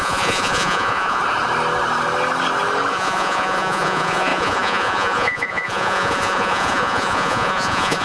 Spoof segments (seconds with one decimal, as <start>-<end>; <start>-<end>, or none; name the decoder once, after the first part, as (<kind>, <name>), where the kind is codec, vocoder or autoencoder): 0.0-1.2 (vocoder, Vocos); 2.9-8.0